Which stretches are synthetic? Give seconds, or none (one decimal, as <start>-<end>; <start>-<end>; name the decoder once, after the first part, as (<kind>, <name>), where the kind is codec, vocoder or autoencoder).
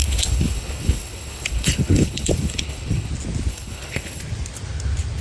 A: 0.0-3.1 (codec, HILCodec); 3.5-4.2